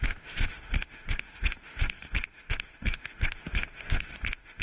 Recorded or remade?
remade